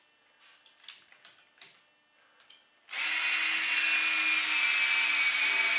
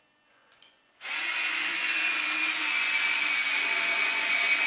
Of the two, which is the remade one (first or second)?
second